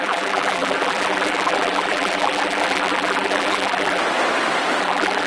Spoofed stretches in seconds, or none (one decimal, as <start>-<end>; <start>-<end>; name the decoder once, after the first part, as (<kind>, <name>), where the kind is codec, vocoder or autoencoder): 0.0-4.0 (vocoder, BigVGAN v2); 4.8-5.3